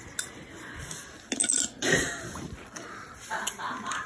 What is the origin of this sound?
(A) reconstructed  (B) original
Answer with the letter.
B